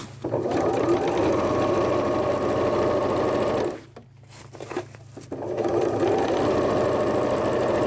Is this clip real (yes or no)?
yes